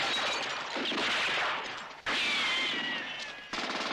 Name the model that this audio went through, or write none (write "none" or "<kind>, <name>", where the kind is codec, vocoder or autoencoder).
none